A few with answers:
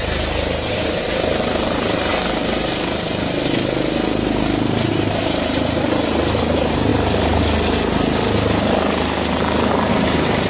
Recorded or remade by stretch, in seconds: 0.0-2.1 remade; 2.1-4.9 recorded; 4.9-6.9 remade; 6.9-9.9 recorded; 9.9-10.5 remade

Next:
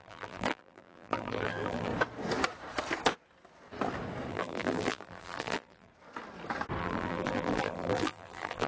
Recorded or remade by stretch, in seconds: 0.0-1.9 remade; 1.9-4.3 recorded; 4.3-5.9 remade; 5.9-6.8 recorded; 6.8-8.7 remade